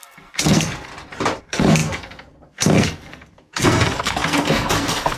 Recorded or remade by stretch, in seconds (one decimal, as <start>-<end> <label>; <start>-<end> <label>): 0.0-0.9 remade; 0.9-1.4 recorded; 1.4-5.2 remade